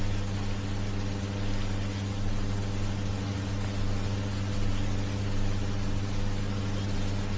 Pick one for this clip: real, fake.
real